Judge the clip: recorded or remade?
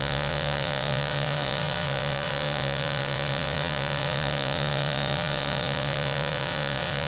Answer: remade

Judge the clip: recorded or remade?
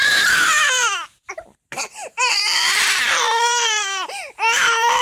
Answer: remade